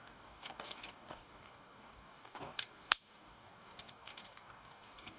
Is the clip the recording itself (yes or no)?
no